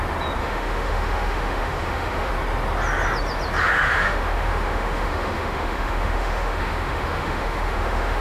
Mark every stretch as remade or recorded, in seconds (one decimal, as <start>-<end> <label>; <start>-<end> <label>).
0.0-0.4 recorded; 0.4-2.3 remade; 2.3-3.6 recorded; 3.6-8.2 remade